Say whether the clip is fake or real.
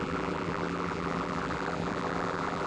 fake